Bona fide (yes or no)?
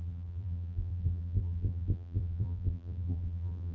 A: no